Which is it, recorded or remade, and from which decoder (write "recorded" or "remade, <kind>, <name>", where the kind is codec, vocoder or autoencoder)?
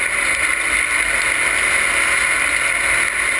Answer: recorded